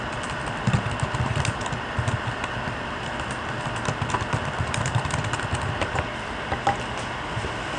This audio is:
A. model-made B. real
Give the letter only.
A